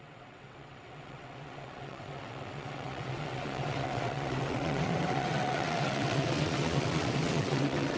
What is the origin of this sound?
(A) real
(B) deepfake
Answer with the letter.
B